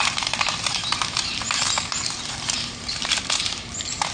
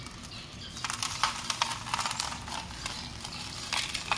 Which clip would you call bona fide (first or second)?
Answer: second